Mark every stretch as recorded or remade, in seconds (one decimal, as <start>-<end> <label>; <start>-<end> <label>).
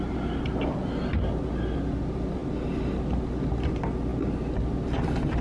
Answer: 0.0-5.4 recorded